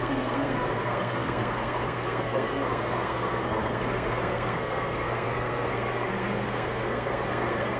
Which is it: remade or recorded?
remade